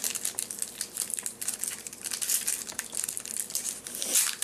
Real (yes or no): yes